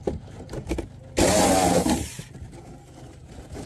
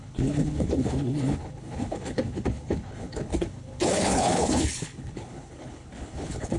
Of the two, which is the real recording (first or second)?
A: first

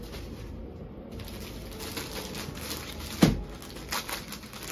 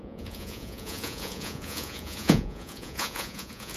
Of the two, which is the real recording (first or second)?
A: first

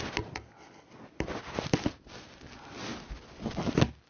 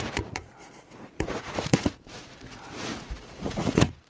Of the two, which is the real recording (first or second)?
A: first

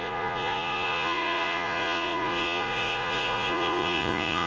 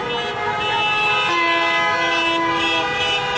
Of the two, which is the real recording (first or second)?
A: second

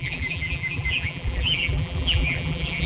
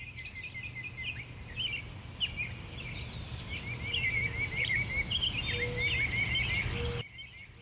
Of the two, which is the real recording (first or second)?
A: second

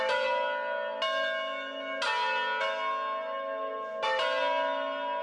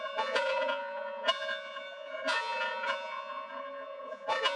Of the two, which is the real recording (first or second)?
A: first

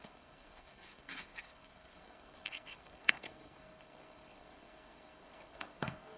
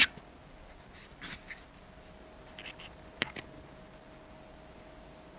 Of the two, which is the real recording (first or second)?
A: second